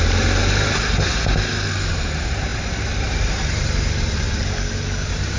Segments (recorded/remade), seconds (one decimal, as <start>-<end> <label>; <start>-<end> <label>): 0.0-0.4 remade; 0.4-1.9 recorded; 1.9-5.4 remade